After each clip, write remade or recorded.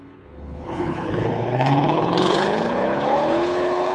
remade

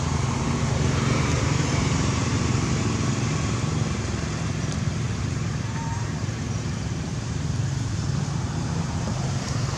remade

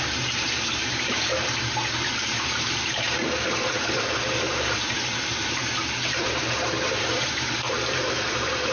remade